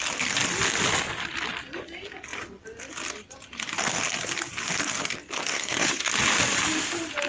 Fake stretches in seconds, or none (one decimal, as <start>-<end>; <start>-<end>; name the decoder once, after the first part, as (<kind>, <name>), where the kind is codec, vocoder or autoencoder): 5.5-6.1 (codec, SNAC)